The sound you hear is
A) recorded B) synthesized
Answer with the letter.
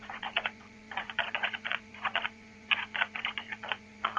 B